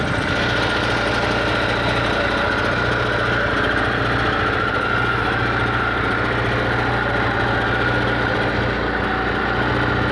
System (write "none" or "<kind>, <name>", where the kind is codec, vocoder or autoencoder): none